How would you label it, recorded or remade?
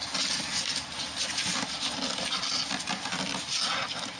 recorded